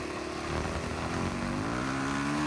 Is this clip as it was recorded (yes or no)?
yes